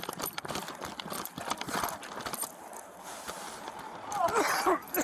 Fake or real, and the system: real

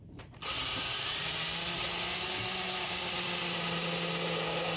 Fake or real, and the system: real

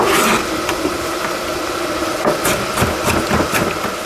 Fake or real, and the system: real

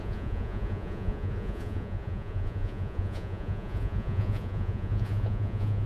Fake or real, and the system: fake, vocoder, Vocos